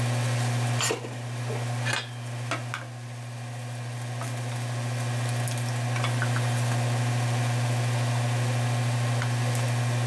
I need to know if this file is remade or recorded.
recorded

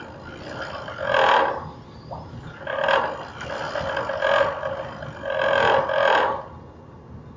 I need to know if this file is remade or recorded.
recorded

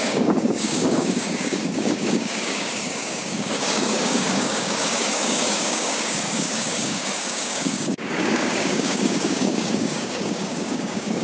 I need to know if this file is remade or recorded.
remade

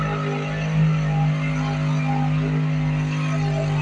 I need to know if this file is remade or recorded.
recorded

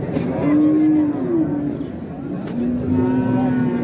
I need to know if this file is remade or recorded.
recorded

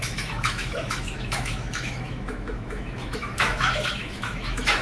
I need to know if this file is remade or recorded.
remade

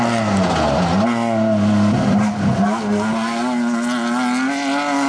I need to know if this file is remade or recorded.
recorded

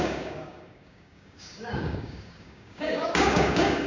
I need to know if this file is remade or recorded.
remade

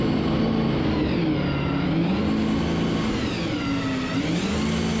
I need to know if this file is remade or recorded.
recorded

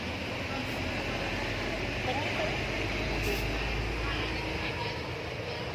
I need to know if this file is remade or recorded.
recorded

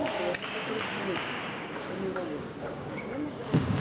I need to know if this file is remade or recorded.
remade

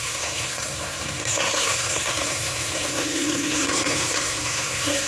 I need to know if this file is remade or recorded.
remade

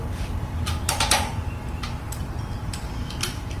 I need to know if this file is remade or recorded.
remade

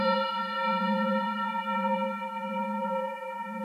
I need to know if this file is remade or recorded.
remade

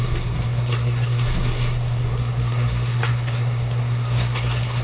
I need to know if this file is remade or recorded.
remade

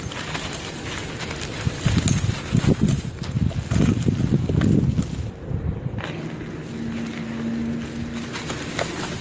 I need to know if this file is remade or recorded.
recorded